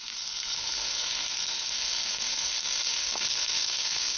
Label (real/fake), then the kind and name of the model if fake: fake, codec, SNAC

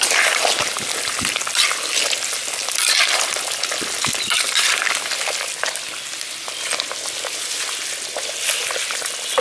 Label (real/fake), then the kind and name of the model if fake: real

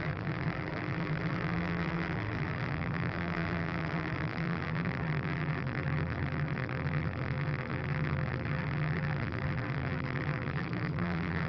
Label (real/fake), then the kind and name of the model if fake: fake, vocoder, BigVGAN v2